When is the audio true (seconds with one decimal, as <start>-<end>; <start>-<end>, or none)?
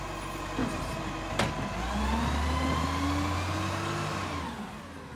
0.0-5.2